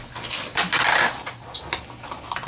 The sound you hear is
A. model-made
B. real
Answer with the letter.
B